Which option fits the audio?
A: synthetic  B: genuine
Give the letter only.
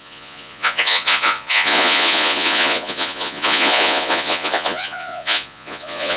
A